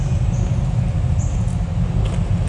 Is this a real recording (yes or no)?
yes